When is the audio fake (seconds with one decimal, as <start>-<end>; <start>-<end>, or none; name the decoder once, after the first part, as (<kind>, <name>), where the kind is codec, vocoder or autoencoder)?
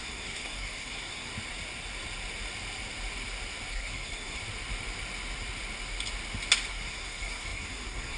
0.0-1.3 (codec, SNAC); 3.7-4.4; 6.7-8.2